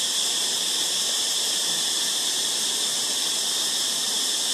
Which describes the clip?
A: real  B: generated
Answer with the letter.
B